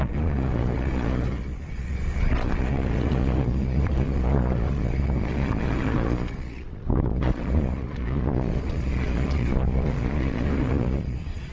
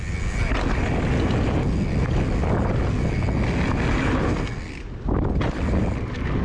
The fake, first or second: first